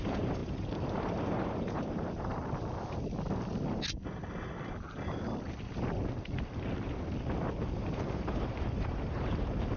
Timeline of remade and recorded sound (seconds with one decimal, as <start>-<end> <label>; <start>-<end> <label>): 0.0-2.4 remade; 2.4-7.6 recorded; 7.6-9.8 remade